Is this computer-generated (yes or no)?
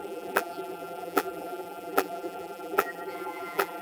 yes